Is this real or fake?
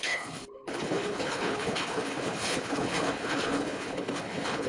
fake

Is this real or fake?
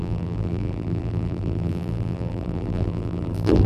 fake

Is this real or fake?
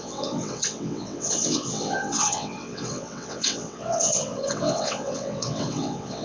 fake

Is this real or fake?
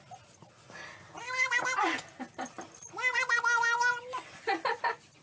real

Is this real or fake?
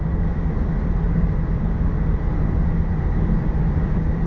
real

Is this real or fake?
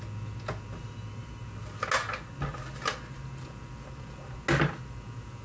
real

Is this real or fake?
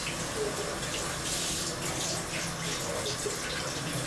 real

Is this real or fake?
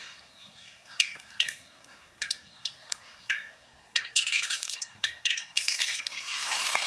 fake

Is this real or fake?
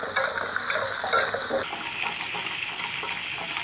real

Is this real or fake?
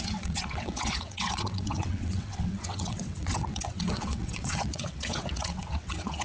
fake